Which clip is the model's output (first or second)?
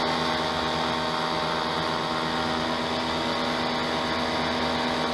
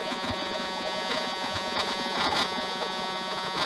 second